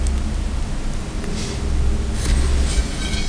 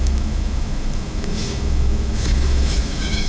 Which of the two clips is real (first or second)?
first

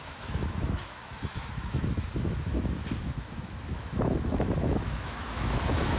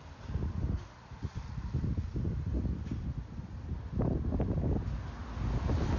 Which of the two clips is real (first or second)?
second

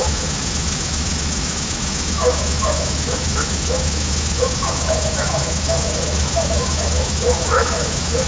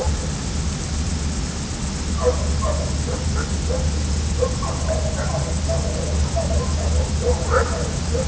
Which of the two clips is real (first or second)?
second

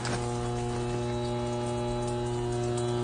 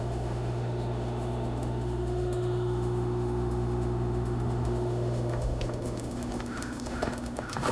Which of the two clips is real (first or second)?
first